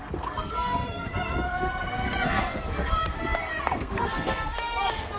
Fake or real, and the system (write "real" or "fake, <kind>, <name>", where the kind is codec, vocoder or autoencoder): fake, codec, SNAC